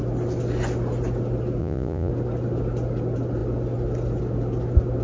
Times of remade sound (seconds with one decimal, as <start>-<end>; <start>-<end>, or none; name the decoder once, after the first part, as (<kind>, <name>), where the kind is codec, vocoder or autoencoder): 1.6-2.1 (vocoder, Vocos)